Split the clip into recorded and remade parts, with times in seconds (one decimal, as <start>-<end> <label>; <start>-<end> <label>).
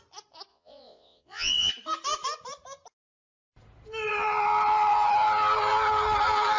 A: 0.0-0.5 recorded; 0.5-1.7 remade; 1.7-6.6 recorded